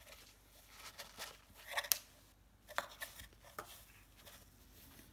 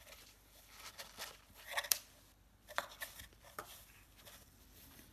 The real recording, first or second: first